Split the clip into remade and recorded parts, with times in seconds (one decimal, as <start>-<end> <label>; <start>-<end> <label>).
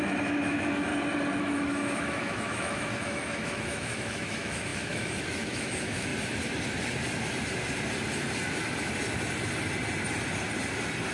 0.0-0.9 remade; 0.9-1.4 recorded; 1.4-6.1 remade; 6.1-11.1 recorded